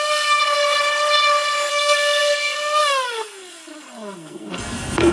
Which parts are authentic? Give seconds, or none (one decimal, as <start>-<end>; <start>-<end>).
0.4-1.7